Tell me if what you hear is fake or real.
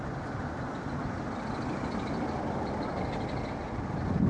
real